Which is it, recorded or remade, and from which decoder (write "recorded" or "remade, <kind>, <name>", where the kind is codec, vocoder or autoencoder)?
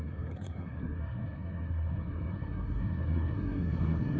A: remade, codec, SNAC